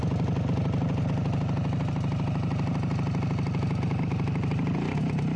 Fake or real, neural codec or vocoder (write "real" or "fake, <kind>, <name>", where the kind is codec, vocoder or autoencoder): real